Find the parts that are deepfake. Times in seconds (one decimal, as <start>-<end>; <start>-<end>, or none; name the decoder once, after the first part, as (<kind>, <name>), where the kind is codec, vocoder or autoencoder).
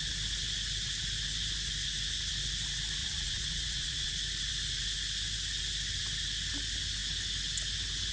3.0-4.1 (vocoder, Vocos)